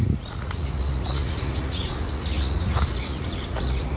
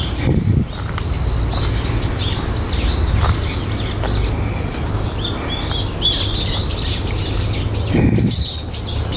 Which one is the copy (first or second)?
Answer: first